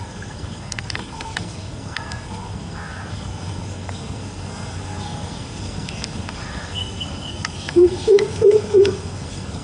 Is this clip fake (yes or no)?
yes